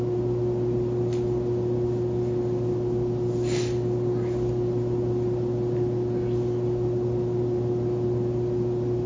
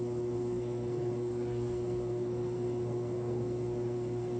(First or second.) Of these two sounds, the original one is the first